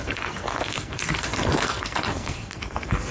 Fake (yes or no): yes